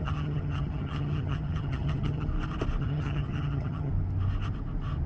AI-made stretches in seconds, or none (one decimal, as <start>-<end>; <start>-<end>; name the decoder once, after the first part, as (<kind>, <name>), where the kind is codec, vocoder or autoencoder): 0.0-2.3 (vocoder, HiFi-GAN); 2.8-3.9